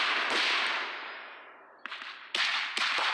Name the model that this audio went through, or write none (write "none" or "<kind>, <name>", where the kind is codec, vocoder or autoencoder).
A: none